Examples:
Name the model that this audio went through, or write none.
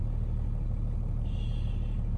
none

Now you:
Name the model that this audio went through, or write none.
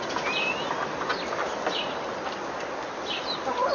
none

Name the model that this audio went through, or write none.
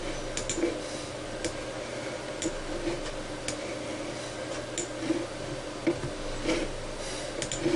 none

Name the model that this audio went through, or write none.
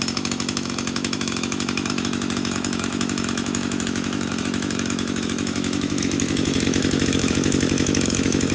autoencoder, DAC-VAE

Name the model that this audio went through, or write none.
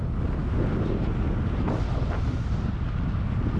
none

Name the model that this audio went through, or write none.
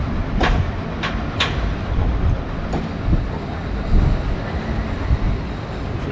none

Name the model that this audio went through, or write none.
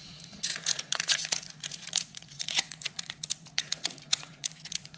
vocoder, Vocos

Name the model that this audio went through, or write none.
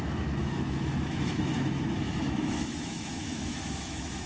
autoencoder, DAC-VAE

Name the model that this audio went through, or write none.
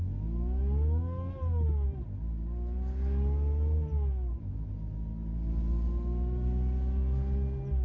none